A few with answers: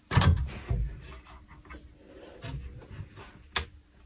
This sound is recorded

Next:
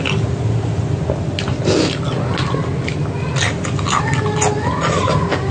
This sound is recorded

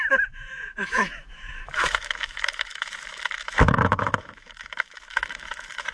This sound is remade